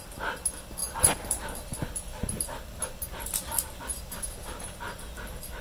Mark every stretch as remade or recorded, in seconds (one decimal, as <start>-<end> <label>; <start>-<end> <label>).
0.0-0.8 recorded; 0.8-2.8 remade; 2.8-5.6 recorded